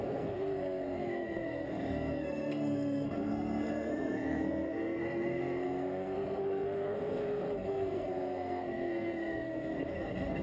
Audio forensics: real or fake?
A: fake